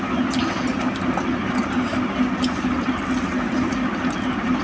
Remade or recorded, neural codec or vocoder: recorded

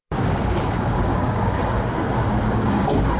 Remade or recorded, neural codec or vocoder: remade, codec, DAC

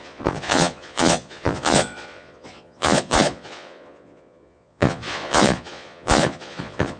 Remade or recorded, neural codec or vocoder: remade, vocoder, Vocos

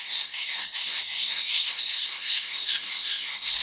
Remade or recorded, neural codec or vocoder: remade, codec, SNAC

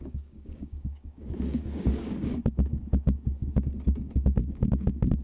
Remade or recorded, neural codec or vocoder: remade, codec, DAC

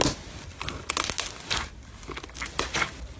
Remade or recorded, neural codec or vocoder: recorded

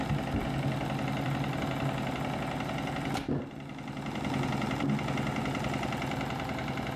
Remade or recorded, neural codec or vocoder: recorded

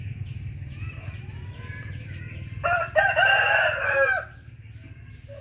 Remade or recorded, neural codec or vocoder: recorded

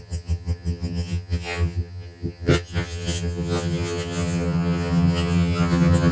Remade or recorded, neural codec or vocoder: remade, vocoder, HiFi-GAN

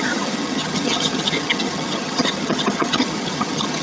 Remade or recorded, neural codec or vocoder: remade, vocoder, HiFi-GAN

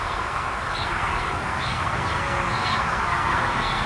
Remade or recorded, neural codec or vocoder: remade, codec, SNAC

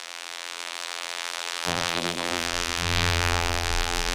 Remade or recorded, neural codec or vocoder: remade, vocoder, BigVGAN v2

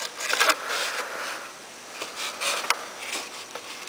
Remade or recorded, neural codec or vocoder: recorded